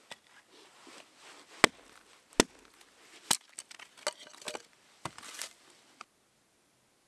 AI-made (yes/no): no